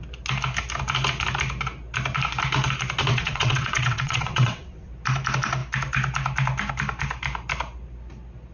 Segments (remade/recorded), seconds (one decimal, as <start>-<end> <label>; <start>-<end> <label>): 0.0-3.1 recorded; 3.1-4.9 remade; 4.9-8.5 recorded